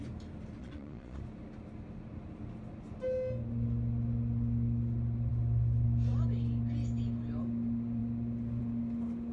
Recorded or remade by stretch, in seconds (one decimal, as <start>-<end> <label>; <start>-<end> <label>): 0.0-0.6 recorded; 0.6-1.2 remade; 1.2-9.3 recorded